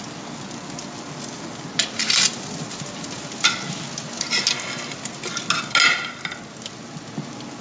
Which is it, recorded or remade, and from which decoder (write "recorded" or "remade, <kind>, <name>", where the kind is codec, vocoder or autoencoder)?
recorded